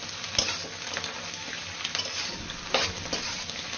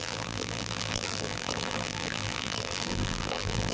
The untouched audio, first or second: first